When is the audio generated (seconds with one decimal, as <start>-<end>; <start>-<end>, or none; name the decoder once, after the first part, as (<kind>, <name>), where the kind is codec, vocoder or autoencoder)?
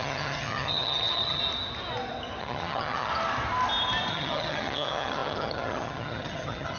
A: 0.0-1.4 (vocoder, HiFi-GAN); 2.4-3.1; 4.1-6.8